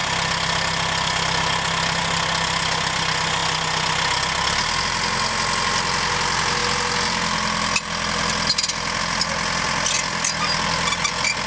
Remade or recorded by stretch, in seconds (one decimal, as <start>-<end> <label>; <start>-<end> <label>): 0.0-11.5 recorded

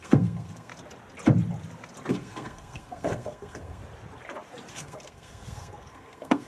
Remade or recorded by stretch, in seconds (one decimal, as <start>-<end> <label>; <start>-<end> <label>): 0.0-0.7 remade; 0.7-2.1 recorded; 2.1-3.8 remade; 3.8-4.7 recorded; 4.7-6.5 remade

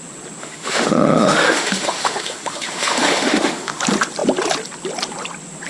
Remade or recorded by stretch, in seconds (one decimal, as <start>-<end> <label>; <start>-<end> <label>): 0.0-0.4 recorded; 0.4-3.8 remade; 3.8-5.7 recorded